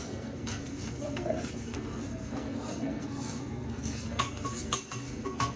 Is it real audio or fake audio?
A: fake